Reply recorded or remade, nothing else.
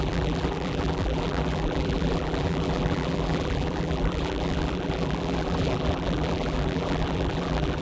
remade